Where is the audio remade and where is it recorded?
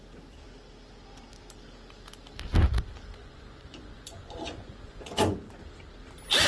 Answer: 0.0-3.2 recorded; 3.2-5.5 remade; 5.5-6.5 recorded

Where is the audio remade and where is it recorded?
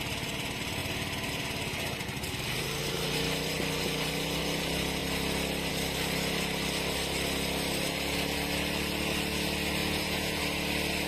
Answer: 0.0-9.8 recorded; 9.8-10.4 remade; 10.4-11.1 recorded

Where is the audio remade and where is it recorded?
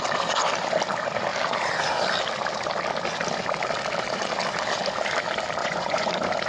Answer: 0.0-5.6 recorded; 5.6-6.1 remade; 6.1-6.5 recorded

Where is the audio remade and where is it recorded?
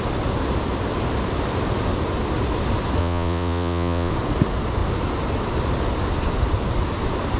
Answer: 0.0-3.0 recorded; 3.0-4.1 remade; 4.1-7.4 recorded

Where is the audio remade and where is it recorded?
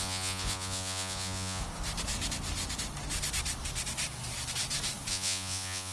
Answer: 0.0-1.6 remade; 1.6-5.1 recorded; 5.1-5.9 remade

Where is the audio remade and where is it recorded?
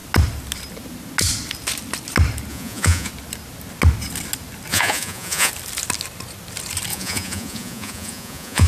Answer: 0.0-2.5 recorded; 2.5-3.1 remade; 3.1-4.7 recorded; 4.7-5.5 remade; 5.5-6.9 recorded; 6.9-8.7 remade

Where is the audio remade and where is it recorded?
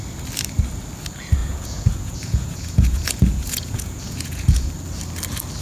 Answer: 0.0-1.4 recorded; 1.4-4.7 remade; 4.7-5.6 recorded